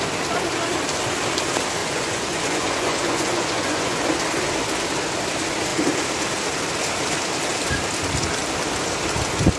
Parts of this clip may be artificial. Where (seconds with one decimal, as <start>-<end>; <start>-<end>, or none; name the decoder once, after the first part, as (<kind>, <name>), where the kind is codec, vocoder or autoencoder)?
1.8-4.0 (vocoder, Vocos)